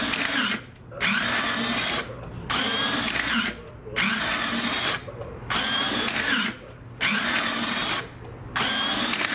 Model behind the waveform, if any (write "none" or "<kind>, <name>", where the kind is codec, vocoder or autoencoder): none